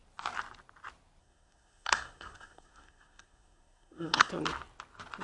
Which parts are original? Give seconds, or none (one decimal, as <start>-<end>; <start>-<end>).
0.0-1.2; 4.3-5.2